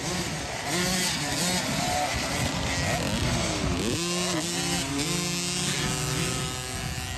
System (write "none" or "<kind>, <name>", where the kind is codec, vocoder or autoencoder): none